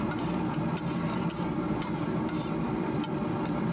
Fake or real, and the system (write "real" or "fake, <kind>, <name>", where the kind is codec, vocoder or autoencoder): fake, vocoder, BigVGAN v2